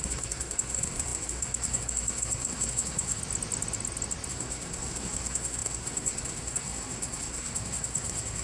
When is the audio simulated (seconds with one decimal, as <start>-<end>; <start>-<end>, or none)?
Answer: 0.0-3.2; 4.3-8.4